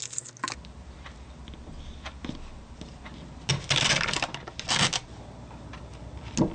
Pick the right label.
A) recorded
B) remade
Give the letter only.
A